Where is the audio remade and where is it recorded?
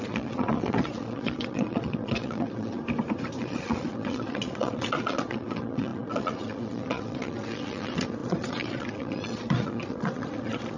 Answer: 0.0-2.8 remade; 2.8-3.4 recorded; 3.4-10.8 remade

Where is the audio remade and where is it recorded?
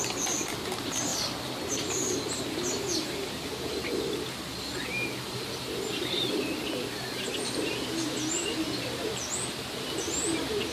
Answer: 0.0-10.7 recorded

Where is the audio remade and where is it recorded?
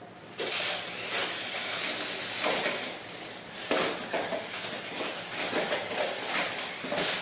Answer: 0.0-7.2 recorded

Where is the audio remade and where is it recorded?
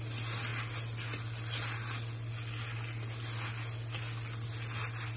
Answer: 0.0-5.2 recorded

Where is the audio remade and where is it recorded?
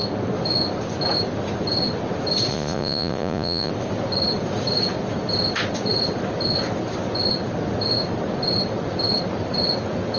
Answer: 0.0-2.5 recorded; 2.5-3.7 remade; 3.7-10.2 recorded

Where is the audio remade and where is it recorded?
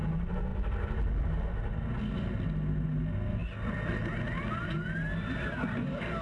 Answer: 0.0-6.2 recorded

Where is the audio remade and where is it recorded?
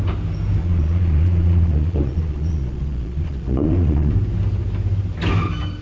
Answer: 0.0-0.6 recorded; 0.6-4.1 remade; 4.1-5.8 recorded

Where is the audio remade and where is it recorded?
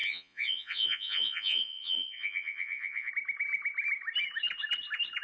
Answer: 0.0-3.1 remade; 3.1-5.2 recorded